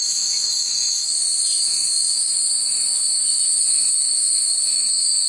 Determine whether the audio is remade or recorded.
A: remade